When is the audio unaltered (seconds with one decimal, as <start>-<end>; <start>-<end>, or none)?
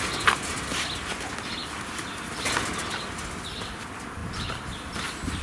0.0-5.4